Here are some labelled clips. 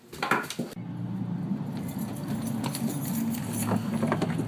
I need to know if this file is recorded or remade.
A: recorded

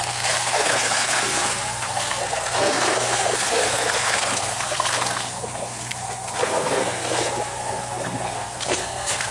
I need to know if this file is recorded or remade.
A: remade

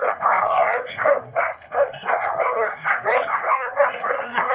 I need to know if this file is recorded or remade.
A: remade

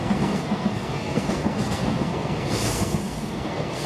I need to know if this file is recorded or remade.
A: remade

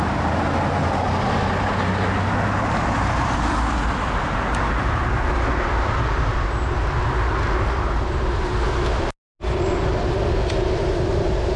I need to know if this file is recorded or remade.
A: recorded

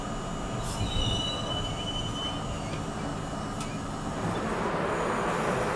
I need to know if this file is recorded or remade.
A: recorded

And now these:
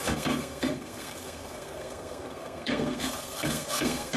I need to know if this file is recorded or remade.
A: remade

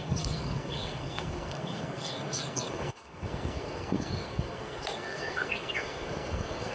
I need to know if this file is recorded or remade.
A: remade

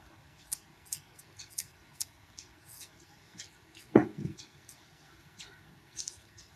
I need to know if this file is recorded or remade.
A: remade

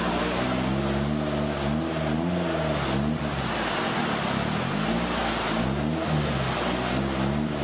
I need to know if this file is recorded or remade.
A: recorded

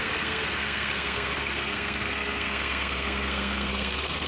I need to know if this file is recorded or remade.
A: remade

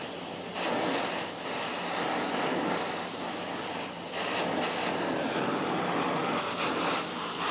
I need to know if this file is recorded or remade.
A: recorded